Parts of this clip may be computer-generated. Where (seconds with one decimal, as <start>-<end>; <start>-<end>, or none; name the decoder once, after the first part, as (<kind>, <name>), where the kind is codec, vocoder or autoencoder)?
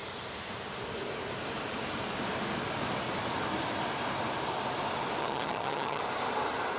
5.2-6.0 (vocoder, HiFi-GAN)